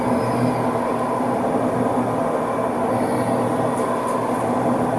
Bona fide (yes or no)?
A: yes